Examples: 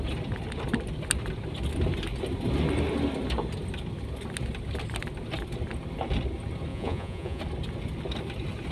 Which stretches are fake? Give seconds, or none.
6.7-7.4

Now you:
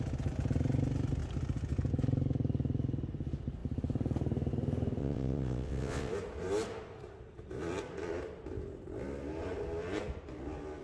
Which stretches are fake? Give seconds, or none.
5.0-6.1